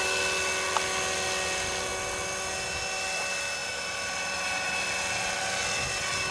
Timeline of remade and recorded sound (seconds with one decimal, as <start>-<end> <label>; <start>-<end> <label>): 0.0-3.6 recorded; 3.6-4.7 remade; 4.7-6.3 recorded